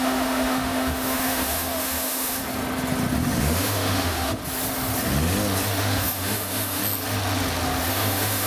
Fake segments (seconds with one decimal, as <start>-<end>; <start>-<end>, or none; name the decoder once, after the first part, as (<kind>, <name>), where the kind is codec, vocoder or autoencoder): 0.0-2.4 (autoencoder, DAC-VAE); 3.4-4.4; 5.8-6.8; 7.9-8.5